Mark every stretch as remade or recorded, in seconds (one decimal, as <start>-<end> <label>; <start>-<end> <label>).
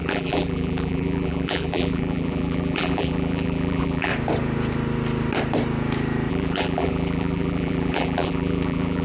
0.0-4.1 remade; 4.1-6.3 recorded; 6.3-9.0 remade